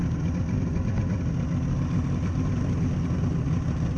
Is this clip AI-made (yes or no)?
no